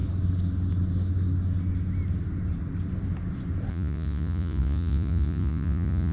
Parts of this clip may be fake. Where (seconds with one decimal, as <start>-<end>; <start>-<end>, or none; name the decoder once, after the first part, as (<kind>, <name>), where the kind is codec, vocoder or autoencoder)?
3.7-6.1 (vocoder, Vocos)